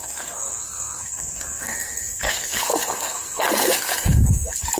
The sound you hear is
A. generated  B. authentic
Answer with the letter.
A